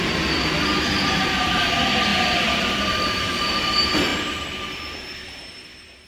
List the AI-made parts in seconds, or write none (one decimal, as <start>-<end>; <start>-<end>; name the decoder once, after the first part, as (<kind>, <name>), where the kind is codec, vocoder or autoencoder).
none